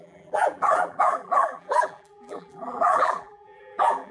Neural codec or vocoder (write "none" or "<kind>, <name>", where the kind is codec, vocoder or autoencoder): vocoder, BigVGAN v2